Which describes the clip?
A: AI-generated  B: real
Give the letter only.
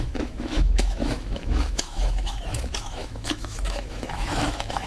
A